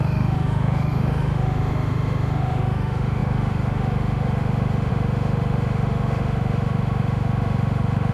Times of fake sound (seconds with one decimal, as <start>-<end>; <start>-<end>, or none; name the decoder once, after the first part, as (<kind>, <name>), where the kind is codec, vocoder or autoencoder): 0.0-8.1 (autoencoder, DAC-VAE)